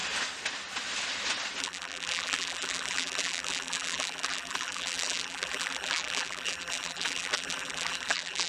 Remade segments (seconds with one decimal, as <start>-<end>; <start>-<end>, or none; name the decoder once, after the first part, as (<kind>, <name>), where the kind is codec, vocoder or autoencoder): 1.6-8.5 (vocoder, BigVGAN v2)